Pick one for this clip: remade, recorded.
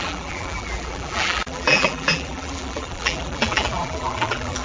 remade